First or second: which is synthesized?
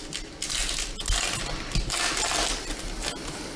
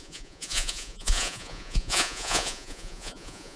second